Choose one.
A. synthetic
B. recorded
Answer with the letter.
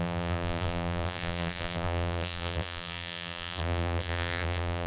A